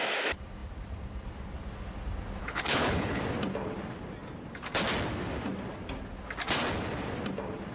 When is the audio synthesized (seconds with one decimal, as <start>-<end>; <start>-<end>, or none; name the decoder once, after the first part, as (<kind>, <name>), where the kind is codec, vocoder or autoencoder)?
2.4-3.2 (codec, HILCodec)